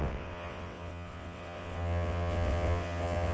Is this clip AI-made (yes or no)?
yes